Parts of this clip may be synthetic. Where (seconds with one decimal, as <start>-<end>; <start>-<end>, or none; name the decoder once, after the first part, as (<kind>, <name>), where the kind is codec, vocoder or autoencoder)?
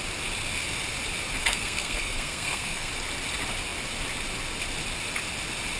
1.4-2.9 (codec, SNAC)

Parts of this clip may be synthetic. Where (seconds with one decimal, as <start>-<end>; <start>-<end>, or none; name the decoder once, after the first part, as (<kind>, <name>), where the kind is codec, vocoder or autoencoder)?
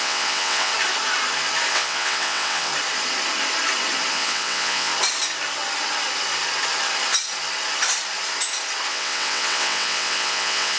0.0-0.7 (vocoder, WaveNeXt); 1.7-2.7; 4.1-4.9; 8.9-10.8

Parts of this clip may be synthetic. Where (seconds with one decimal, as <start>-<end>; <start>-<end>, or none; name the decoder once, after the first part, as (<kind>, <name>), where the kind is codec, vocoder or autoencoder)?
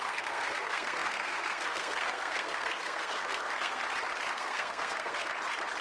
0.0-3.8 (codec, SNAC); 4.3-5.3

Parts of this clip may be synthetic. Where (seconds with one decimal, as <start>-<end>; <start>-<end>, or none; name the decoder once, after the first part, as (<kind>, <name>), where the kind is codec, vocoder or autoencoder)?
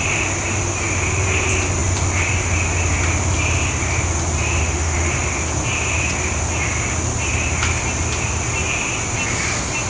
4.6-5.1 (autoencoder, DAC-VAE)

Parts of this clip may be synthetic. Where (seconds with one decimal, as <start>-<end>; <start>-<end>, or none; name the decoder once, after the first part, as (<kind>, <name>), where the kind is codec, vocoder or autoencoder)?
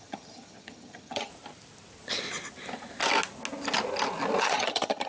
0.0-1.3 (vocoder, HiFi-GAN); 4.4-5.1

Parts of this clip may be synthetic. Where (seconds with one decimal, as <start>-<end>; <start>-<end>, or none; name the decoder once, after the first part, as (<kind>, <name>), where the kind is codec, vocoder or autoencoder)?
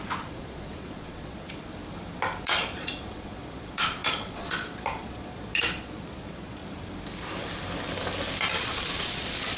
0.0-1.7 (vocoder, Vocos); 2.4-6.6; 8.6-9.6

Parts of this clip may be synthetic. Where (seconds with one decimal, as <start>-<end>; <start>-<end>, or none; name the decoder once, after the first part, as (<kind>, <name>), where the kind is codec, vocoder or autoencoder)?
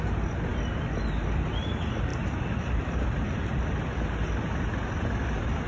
2.1-3.8 (vocoder, BigVGAN v2)